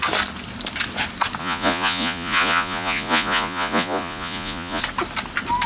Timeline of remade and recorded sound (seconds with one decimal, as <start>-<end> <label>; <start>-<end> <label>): 0.0-1.4 recorded; 1.4-4.8 remade; 4.8-5.7 recorded